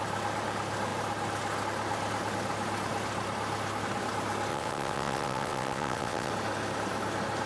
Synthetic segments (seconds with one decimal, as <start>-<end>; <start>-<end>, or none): 4.5-6.3